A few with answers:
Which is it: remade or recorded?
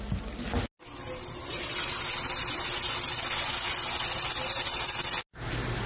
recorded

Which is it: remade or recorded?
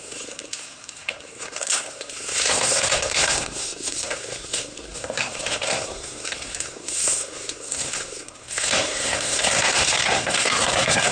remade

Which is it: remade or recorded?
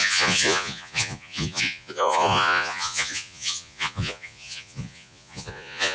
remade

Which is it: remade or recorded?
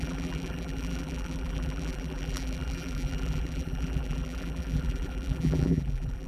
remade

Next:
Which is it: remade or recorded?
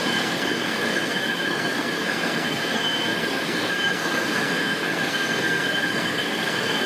remade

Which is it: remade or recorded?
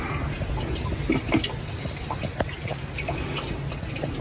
recorded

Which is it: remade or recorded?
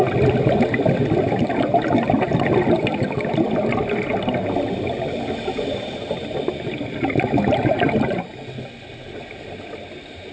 recorded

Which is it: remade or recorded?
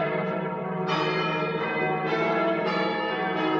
remade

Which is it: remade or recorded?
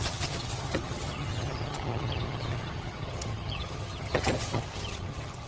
remade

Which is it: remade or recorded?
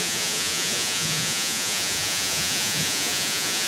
remade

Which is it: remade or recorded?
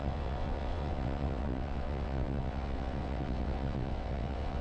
remade